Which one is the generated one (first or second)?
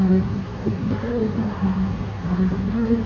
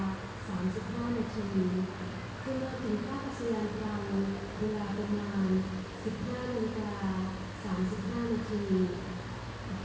first